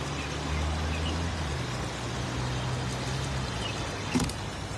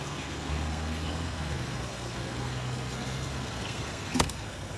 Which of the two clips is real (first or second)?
first